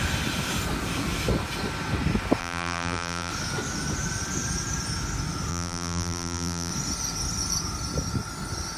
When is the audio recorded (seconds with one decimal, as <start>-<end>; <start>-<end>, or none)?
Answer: 0.0-2.4; 3.3-5.5; 6.7-8.8